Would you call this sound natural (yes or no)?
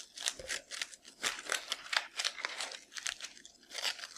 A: yes